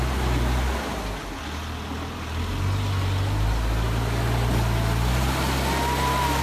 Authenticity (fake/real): real